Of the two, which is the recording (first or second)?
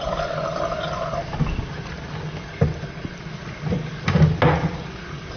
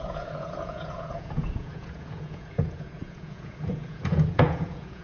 first